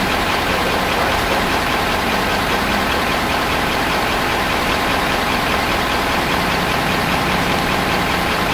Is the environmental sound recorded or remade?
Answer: remade